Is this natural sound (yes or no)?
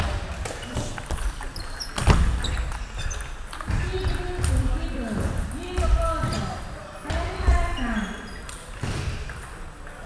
yes